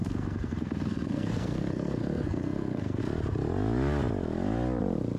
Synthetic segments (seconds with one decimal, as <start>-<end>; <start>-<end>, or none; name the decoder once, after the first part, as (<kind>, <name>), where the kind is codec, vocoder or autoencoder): 0.0-3.0 (codec, SNAC)